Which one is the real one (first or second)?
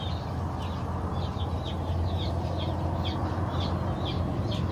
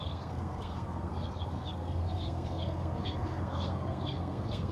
first